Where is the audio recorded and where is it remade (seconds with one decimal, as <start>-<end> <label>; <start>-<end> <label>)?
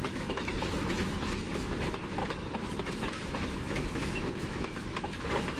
0.0-2.2 remade; 2.2-2.8 recorded; 2.8-5.6 remade